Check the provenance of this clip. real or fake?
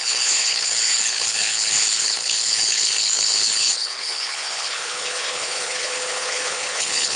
fake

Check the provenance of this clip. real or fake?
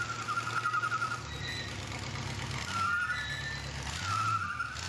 real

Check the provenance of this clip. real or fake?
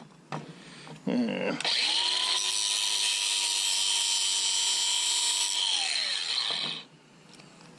real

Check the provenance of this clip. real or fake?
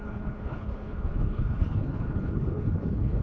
fake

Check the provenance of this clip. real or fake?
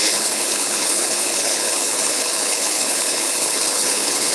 fake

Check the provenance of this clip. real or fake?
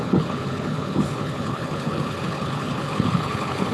fake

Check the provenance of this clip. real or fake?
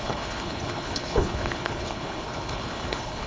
fake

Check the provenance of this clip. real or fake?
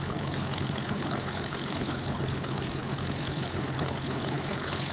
fake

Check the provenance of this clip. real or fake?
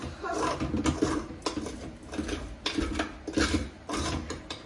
real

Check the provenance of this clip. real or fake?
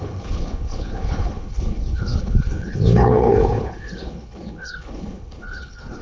fake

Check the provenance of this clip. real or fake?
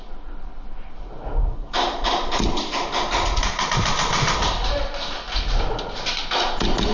real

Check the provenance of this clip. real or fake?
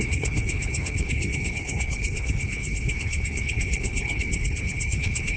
fake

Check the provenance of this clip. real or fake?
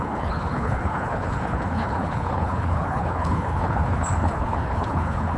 fake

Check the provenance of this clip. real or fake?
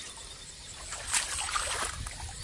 real